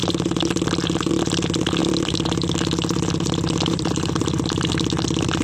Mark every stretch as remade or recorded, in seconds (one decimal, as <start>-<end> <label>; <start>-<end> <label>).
0.0-1.1 remade; 1.1-1.8 recorded; 1.8-4.7 remade; 4.7-5.4 recorded